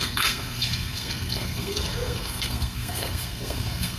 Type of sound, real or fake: fake